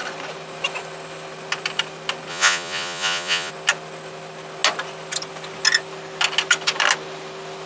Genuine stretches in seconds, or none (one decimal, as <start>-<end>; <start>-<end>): 0.0-2.3; 3.5-7.7